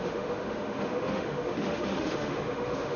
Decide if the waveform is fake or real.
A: fake